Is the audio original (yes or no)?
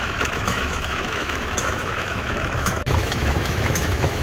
no